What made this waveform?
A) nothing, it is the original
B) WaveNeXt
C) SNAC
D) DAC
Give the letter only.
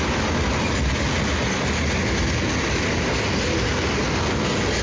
A